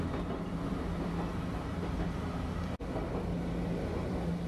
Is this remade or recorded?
recorded